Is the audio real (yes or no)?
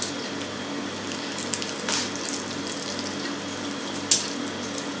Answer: yes